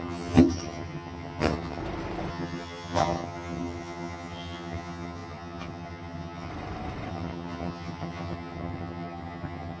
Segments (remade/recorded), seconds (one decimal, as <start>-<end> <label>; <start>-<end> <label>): 0.0-1.8 remade; 1.8-2.3 recorded; 2.3-6.5 remade; 6.5-7.1 recorded; 7.1-9.8 remade